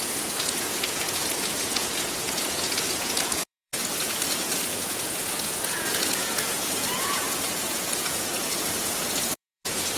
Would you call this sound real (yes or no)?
no